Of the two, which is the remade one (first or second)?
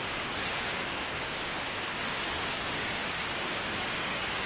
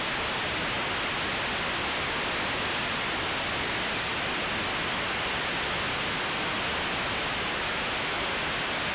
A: first